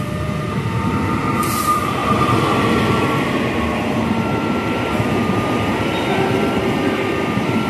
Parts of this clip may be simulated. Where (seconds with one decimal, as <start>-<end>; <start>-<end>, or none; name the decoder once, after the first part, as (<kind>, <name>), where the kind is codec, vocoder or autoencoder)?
0.0-2.0 (vocoder, BigVGAN v2); 3.4-7.7